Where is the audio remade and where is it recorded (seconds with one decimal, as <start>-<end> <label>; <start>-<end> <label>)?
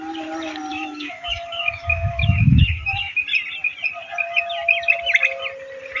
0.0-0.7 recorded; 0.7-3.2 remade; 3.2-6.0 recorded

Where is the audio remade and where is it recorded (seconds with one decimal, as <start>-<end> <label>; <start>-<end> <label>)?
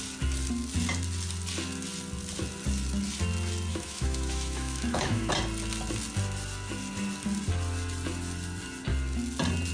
0.0-3.7 recorded; 3.7-5.3 remade; 5.3-9.7 recorded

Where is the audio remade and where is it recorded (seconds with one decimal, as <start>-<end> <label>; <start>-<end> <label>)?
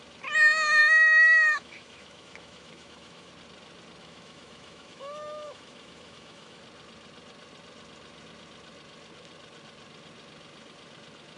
0.0-0.8 recorded; 0.8-3.3 remade; 3.3-4.0 recorded; 4.0-6.6 remade; 6.6-11.4 recorded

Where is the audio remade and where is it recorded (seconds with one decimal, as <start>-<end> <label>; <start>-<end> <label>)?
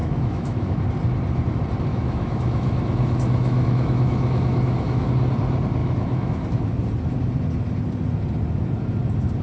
0.0-0.8 remade; 0.8-1.9 recorded; 1.9-5.1 remade; 5.1-5.8 recorded; 5.8-6.8 remade; 6.8-9.4 recorded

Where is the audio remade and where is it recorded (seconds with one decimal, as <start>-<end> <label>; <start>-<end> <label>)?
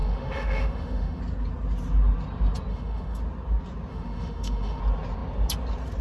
0.0-1.2 remade; 1.2-2.7 recorded; 2.7-3.2 remade; 3.2-3.9 recorded; 3.9-4.8 remade; 4.8-6.0 recorded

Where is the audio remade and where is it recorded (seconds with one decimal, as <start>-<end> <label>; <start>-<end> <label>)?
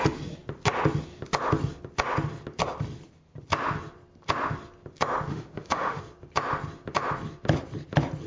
0.0-5.3 recorded; 5.3-6.0 remade; 6.0-8.3 recorded